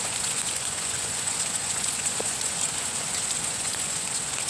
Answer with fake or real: fake